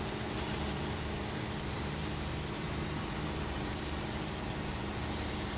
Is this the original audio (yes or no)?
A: no